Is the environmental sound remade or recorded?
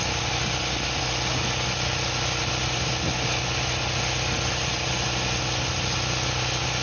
recorded